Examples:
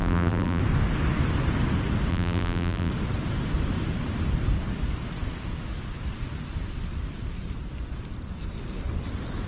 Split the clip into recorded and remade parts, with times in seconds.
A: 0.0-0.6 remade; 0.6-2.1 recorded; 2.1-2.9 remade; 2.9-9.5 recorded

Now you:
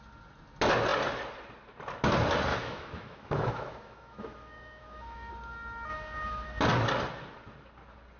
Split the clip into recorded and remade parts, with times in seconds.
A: 0.0-2.5 recorded; 2.5-5.3 remade; 5.3-5.9 recorded; 5.9-6.6 remade; 6.6-8.2 recorded

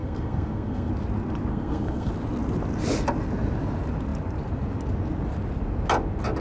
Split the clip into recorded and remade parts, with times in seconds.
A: 0.0-0.9 remade; 0.9-1.5 recorded; 1.5-2.1 remade; 2.1-6.4 recorded

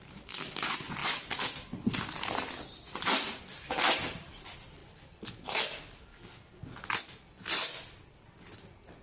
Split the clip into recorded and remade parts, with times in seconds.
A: 0.0-9.0 recorded

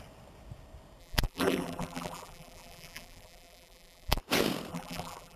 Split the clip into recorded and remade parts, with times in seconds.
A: 0.0-1.0 recorded; 1.0-4.2 remade; 4.2-4.7 recorded; 4.7-5.4 remade

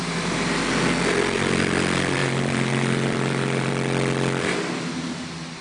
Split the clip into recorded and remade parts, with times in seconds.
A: 0.0-2.2 recorded; 2.2-3.7 remade; 3.7-5.6 recorded

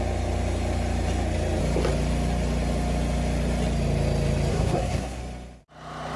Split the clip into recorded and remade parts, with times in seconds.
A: 0.0-4.5 recorded; 4.5-5.2 remade; 5.2-6.2 recorded

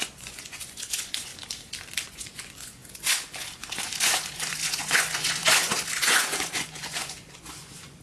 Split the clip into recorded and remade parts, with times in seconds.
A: 0.0-1.3 remade; 1.3-2.0 recorded; 2.0-8.0 remade